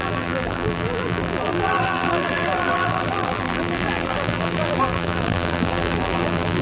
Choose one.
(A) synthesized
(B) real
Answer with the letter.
A